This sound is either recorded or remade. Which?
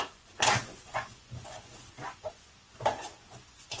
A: remade